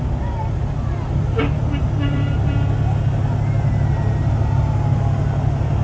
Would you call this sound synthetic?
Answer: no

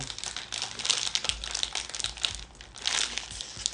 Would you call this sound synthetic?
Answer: no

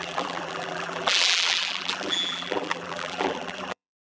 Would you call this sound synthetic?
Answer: yes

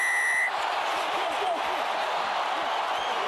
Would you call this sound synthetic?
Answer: no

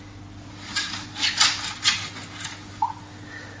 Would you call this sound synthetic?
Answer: no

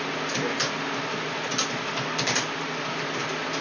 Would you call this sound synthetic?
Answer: no